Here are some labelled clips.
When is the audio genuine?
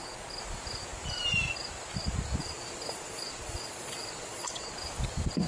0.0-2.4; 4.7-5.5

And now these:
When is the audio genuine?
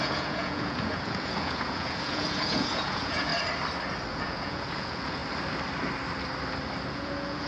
3.3-4.1; 5.2-6.9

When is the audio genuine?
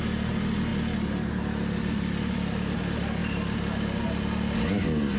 0.0-5.2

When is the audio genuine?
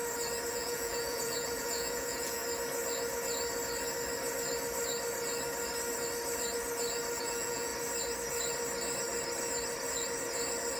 0.0-0.5; 2.4-7.2; 7.7-10.8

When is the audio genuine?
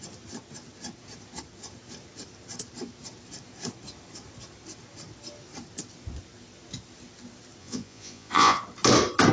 0.0-7.6; 8.6-9.3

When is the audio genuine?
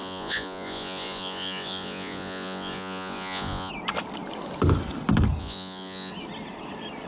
3.7-5.4; 6.1-7.1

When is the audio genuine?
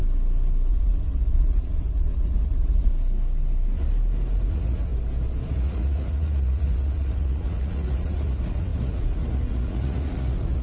0.0-0.7; 2.9-4.5; 4.9-5.5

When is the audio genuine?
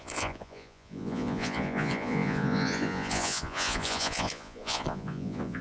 none